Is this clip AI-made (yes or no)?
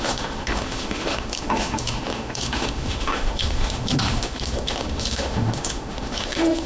yes